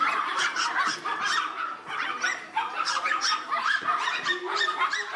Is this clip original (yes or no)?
no